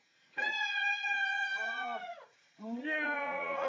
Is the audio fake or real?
fake